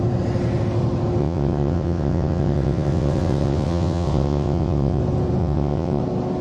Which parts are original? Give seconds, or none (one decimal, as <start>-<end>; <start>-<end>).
0.0-1.2; 5.0-5.4; 6.0-6.4